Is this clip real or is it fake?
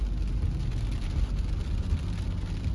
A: real